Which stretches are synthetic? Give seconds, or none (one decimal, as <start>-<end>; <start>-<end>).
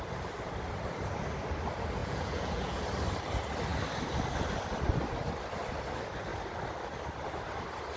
2.0-2.8